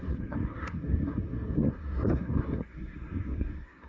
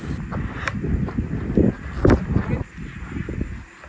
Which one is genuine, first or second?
second